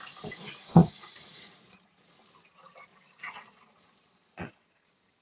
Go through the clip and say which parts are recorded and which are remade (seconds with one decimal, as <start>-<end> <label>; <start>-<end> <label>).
0.0-0.7 recorded; 0.7-2.0 remade; 2.0-2.9 recorded; 2.9-4.5 remade; 4.5-5.2 recorded